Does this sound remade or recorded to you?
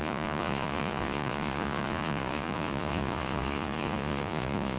remade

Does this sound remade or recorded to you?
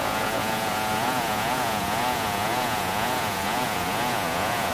remade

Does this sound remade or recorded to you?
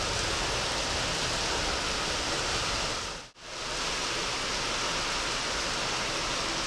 recorded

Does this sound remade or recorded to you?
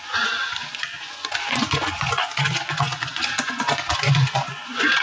remade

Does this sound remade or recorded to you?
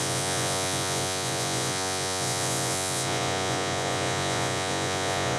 remade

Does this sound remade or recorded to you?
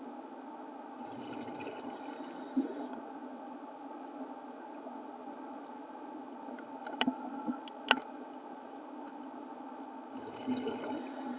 recorded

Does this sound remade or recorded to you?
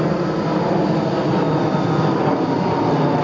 recorded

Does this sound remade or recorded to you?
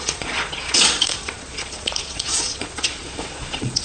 remade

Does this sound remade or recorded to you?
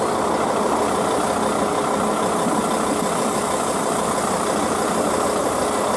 recorded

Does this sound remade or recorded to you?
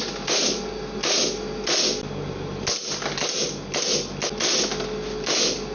recorded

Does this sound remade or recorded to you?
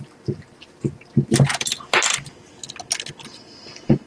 recorded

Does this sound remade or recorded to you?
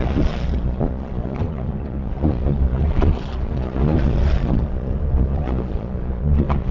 remade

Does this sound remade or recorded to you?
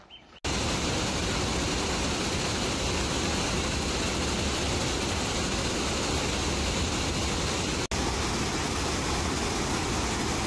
recorded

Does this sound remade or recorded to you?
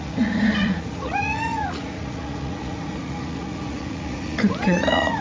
remade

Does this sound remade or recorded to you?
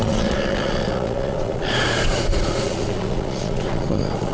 remade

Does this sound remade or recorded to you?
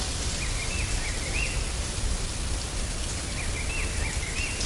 recorded